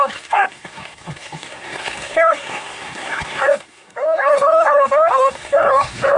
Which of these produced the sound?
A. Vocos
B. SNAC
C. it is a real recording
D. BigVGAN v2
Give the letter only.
B